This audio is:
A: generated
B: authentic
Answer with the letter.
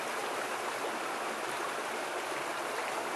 B